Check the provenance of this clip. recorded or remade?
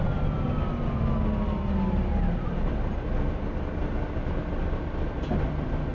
recorded